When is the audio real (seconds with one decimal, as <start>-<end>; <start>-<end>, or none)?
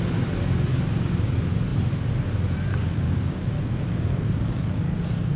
0.0-2.7